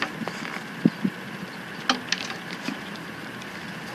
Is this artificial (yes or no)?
no